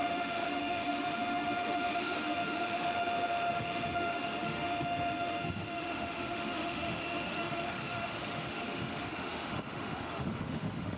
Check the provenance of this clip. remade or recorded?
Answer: remade